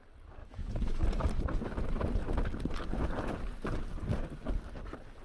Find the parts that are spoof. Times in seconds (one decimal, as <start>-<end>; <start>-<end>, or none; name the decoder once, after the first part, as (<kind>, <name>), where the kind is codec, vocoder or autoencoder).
0.4-1.0 (autoencoder, DAC-VAE)